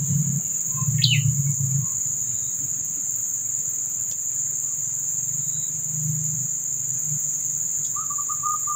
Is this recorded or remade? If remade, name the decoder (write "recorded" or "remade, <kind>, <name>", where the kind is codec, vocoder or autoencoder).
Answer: recorded